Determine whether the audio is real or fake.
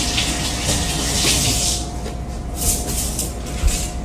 real